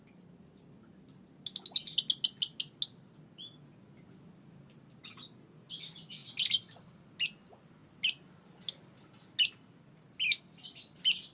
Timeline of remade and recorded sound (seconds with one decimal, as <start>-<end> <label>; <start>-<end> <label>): 0.0-11.3 recorded